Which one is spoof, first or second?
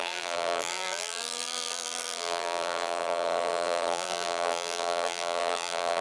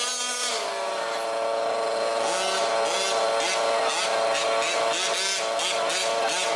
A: first